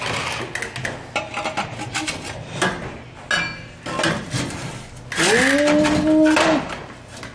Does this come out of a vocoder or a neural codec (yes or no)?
no